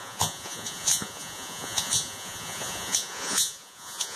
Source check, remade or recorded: remade